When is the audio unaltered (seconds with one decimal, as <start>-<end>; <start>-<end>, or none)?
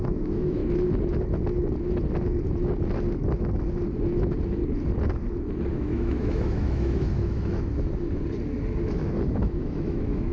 0.6-5.7; 7.7-8.9